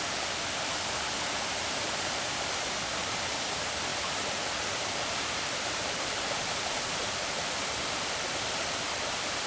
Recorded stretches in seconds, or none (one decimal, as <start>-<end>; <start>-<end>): none

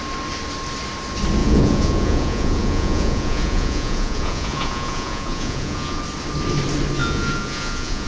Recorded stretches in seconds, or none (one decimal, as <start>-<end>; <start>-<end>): 0.0-1.4; 6.0-7.0

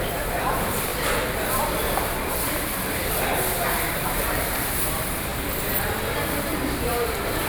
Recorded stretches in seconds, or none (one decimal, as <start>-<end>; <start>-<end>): 0.9-3.7; 5.3-6.1

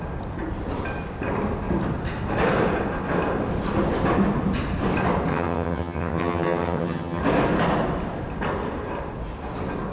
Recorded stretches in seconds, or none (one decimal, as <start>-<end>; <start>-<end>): 0.0-5.3; 7.2-9.9